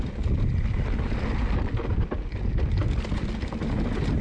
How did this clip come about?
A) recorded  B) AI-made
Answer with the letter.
A